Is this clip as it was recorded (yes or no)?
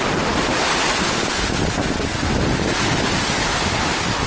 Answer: yes